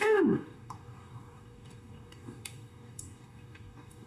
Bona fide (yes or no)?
no